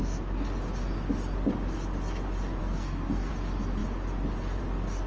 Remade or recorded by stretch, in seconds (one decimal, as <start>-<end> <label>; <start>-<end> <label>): 0.0-2.6 recorded; 2.6-3.3 remade; 3.3-5.1 recorded